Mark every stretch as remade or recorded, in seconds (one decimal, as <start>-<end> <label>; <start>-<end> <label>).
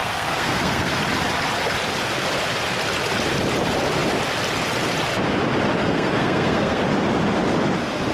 0.0-1.0 remade; 1.0-5.8 recorded; 5.8-6.8 remade; 6.8-8.1 recorded